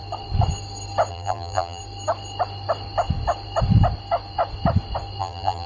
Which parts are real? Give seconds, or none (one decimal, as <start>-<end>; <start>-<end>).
0.0-1.1; 1.8-5.2